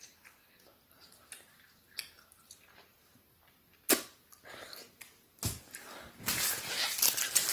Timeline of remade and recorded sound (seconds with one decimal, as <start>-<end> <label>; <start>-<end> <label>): 0.0-7.5 recorded